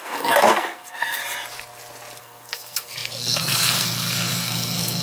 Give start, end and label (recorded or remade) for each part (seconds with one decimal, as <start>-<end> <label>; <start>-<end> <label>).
0.0-1.2 remade; 1.2-2.2 recorded; 2.2-5.0 remade